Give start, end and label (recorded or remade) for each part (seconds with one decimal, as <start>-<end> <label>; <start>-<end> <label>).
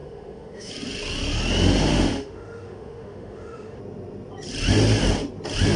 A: 0.0-0.7 remade; 0.7-1.9 recorded; 1.9-3.8 remade; 3.8-5.8 recorded